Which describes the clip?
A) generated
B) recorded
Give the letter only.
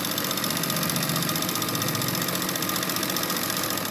B